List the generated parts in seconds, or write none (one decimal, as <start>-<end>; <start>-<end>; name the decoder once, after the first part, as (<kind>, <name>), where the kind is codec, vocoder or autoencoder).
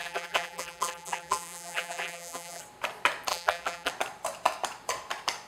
0.0-2.6 (vocoder, BigVGAN v2); 3.3-3.9